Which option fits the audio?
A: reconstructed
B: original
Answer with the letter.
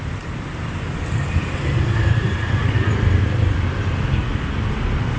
B